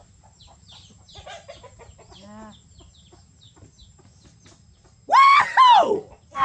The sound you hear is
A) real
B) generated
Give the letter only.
A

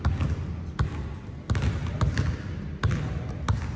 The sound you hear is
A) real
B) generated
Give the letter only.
A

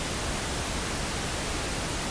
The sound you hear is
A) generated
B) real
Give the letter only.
B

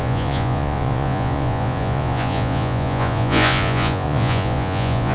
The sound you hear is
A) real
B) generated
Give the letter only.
B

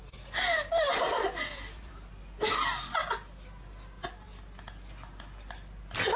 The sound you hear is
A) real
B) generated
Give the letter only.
A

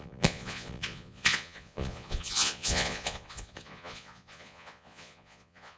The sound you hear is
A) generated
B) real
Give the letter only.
A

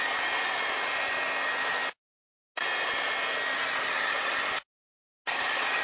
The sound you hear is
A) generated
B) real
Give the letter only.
B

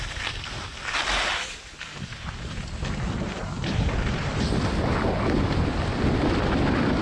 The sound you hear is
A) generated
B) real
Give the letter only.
B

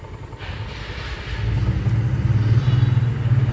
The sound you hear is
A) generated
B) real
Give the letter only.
B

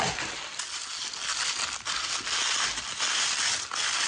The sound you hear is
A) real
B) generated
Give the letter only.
A